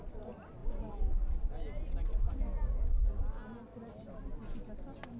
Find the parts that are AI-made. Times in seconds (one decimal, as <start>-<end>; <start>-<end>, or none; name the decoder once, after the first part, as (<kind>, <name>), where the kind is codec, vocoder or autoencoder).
none